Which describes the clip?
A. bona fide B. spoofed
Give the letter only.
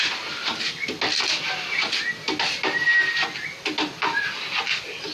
A